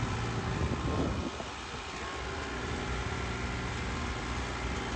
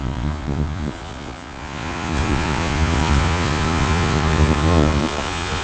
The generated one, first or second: second